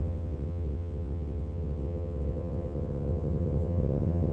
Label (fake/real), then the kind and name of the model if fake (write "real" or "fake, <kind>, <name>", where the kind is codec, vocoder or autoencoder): fake, vocoder, WaveNeXt